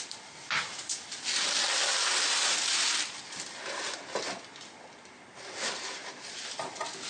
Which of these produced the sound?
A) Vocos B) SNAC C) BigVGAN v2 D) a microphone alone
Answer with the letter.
D